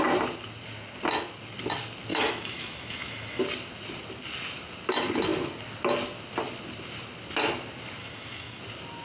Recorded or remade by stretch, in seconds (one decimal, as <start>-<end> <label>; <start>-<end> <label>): 0.0-2.1 recorded; 2.1-3.4 remade; 3.4-8.0 recorded; 8.0-8.6 remade; 8.6-9.0 recorded